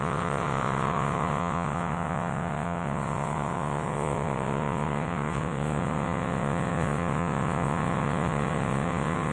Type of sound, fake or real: fake